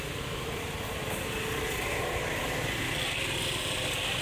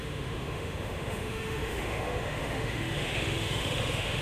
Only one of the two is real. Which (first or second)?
first